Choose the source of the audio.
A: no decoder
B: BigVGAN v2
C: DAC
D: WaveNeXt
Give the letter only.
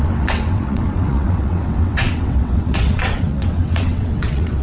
D